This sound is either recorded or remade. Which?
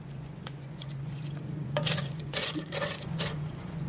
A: remade